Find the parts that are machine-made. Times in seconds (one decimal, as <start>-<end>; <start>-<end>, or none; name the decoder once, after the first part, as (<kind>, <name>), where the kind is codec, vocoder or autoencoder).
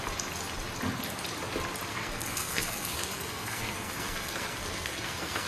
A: 1.9-5.5 (codec, SNAC)